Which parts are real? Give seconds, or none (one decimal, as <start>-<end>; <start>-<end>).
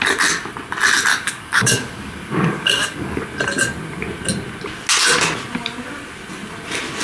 0.0-1.1; 3.2-7.0